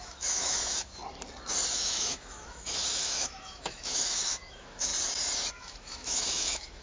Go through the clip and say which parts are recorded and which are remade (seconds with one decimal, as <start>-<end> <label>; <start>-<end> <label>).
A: 0.0-1.0 remade; 1.0-1.7 recorded; 1.7-4.9 remade; 4.9-5.5 recorded; 5.5-6.8 remade